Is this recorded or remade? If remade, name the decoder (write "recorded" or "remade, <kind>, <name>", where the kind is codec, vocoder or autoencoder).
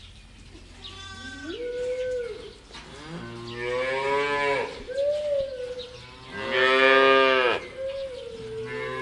recorded